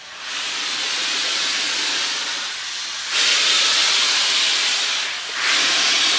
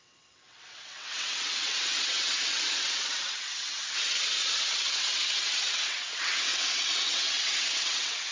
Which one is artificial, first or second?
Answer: second